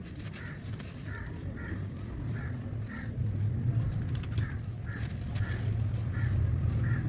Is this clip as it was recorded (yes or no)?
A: no